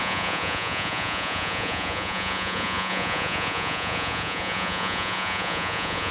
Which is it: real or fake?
fake